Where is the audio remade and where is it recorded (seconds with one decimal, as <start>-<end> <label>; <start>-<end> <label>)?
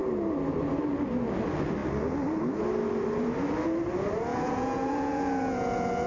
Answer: 0.0-4.3 recorded; 4.3-6.1 remade